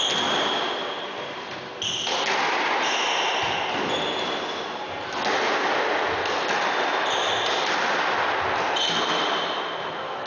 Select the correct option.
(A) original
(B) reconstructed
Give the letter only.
A